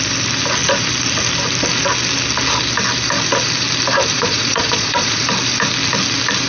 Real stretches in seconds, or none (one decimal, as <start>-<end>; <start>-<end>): 0.0-4.1; 5.2-6.5